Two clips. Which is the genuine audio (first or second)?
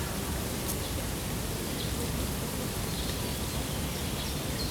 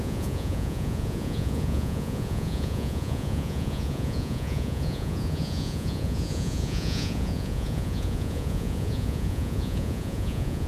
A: first